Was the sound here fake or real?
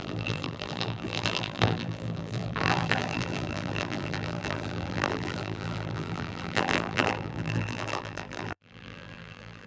fake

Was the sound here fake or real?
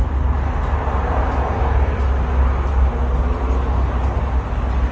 real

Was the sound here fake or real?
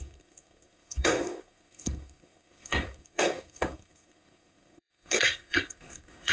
fake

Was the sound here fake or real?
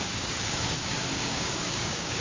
fake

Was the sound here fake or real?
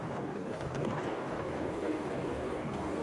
fake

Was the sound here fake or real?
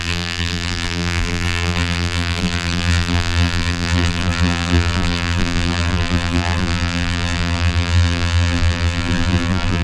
fake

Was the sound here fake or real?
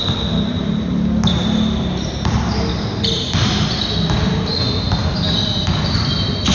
real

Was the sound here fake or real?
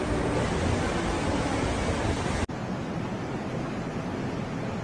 real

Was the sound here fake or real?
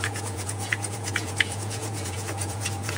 fake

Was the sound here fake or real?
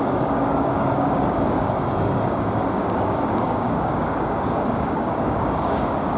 fake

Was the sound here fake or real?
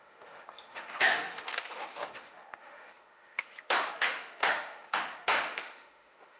fake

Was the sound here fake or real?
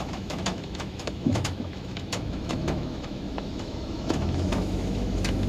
fake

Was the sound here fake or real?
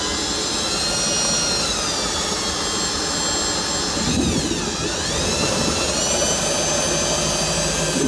real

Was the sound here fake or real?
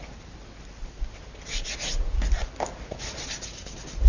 real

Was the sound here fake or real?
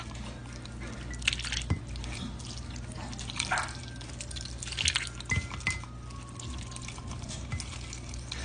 real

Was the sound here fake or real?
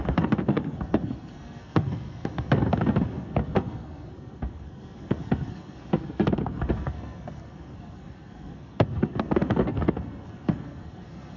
fake